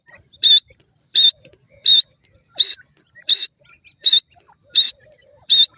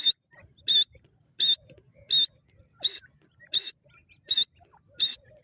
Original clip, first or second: second